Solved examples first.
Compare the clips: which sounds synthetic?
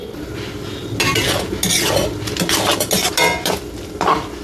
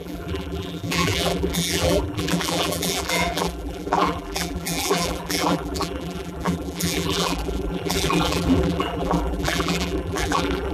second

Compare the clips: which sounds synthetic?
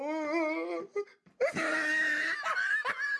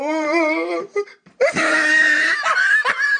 second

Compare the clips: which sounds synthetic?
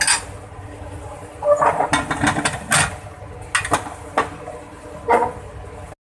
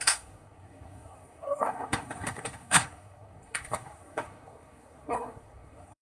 second